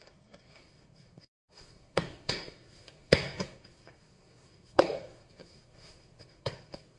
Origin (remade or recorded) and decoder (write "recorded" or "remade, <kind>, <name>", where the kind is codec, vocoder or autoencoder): remade, codec, SNAC